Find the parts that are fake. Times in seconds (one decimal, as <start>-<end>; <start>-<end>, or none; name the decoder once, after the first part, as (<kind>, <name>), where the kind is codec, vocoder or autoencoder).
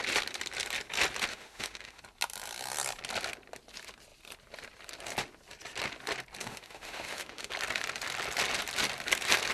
1.3-2.0 (autoencoder, DAC-VAE); 6.4-7.5